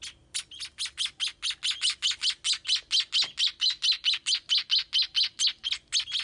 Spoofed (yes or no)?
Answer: no